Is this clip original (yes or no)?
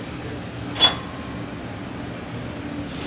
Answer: yes